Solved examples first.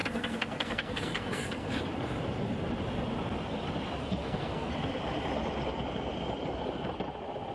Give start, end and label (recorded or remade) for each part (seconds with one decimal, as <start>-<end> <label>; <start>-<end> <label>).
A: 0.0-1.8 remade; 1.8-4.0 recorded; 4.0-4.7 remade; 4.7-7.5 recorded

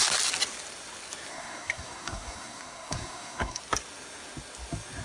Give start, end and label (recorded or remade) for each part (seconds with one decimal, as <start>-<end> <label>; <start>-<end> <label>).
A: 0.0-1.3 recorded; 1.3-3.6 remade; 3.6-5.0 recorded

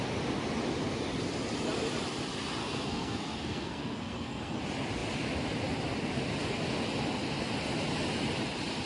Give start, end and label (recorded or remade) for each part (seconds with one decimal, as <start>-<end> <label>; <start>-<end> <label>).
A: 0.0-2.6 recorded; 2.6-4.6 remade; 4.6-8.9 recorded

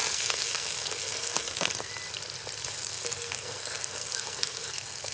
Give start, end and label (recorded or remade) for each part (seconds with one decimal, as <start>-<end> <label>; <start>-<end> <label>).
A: 0.0-1.9 remade; 1.9-2.8 recorded; 2.8-5.1 remade

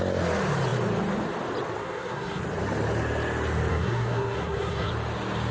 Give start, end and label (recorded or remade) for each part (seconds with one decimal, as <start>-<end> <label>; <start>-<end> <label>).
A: 0.0-1.8 recorded; 1.8-2.4 remade; 2.4-3.7 recorded; 3.7-4.9 remade; 4.9-5.5 recorded

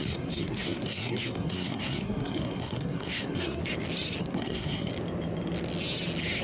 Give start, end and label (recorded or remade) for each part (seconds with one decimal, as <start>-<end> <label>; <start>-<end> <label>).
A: 0.0-3.6 remade; 3.6-4.2 recorded; 4.2-4.9 remade; 4.9-6.4 recorded

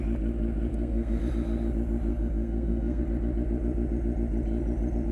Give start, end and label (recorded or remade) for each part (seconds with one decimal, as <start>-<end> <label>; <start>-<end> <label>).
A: 0.0-0.7 recorded; 0.7-1.2 remade; 1.2-2.1 recorded; 2.1-3.0 remade; 3.0-5.1 recorded